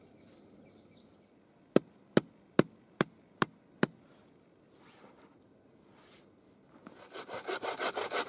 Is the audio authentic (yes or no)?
yes